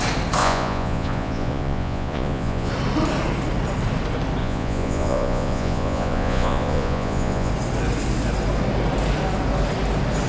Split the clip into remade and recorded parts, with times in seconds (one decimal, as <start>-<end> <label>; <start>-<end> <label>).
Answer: 0.0-0.4 recorded; 0.4-2.7 remade; 2.7-4.4 recorded; 4.4-7.5 remade; 7.5-10.3 recorded